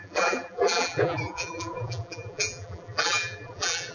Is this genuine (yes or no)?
no